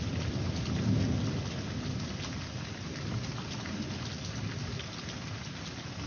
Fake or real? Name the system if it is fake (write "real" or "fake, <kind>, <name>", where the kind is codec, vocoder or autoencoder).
real